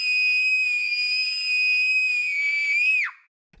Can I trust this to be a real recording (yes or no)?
yes